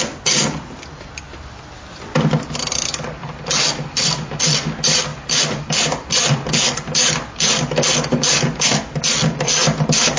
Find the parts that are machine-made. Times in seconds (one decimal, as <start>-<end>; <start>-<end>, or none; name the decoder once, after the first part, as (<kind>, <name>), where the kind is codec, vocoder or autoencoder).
none